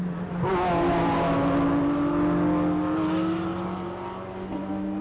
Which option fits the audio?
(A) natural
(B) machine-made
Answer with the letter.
A